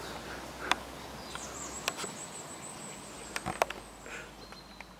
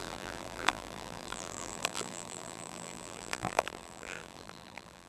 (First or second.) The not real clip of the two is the second